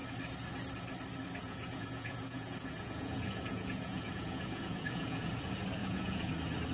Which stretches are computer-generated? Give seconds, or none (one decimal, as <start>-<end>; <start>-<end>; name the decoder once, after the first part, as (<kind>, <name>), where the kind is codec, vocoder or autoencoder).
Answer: 1.4-5.3 (vocoder, Vocos); 5.8-6.3